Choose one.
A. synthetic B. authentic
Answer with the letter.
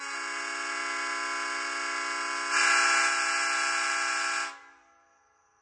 B